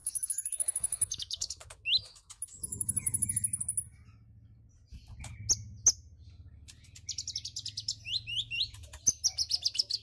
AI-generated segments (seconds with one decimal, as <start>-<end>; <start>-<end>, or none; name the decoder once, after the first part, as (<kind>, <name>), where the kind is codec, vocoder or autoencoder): 0.0-3.3 (autoencoder, DAC-VAE)